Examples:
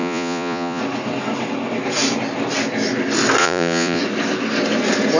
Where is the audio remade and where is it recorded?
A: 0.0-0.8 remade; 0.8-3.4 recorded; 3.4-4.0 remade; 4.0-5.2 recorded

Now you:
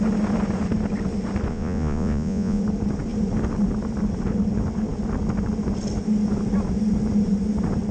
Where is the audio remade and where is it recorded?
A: 0.0-1.5 recorded; 1.5-2.6 remade; 2.6-7.9 recorded

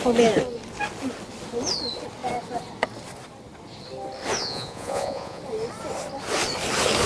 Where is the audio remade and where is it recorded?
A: 0.0-4.4 recorded; 4.4-5.4 remade; 5.4-7.1 recorded

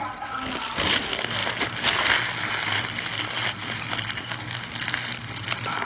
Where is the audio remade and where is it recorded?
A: 0.0-5.8 recorded

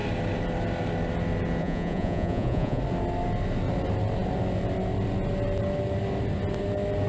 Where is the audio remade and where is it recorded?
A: 0.0-1.6 recorded; 1.6-2.8 remade; 2.8-7.1 recorded